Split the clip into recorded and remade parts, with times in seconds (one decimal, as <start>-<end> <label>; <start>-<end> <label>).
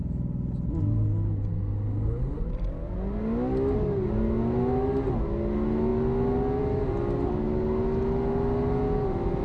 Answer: 0.0-9.4 recorded